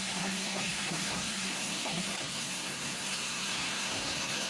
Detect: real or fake fake